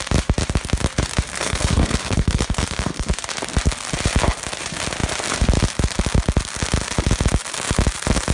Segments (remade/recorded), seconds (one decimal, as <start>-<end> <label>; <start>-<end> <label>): 0.0-1.4 recorded; 1.4-3.1 remade; 3.1-8.3 recorded